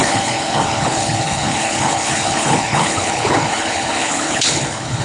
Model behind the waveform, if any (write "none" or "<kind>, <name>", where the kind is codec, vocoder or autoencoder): codec, HILCodec